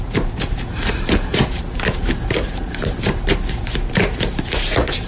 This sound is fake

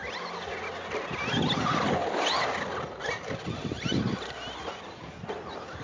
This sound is real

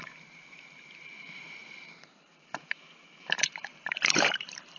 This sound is fake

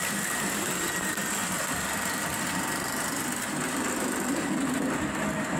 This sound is real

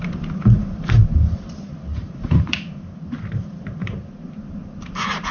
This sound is fake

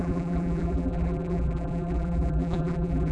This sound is fake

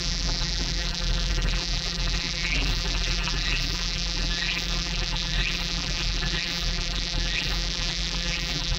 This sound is fake